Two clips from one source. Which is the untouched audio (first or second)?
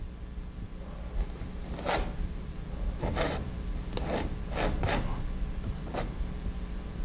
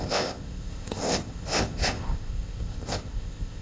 first